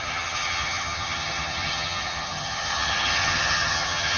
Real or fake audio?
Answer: fake